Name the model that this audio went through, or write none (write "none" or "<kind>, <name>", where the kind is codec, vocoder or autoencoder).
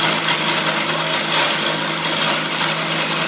none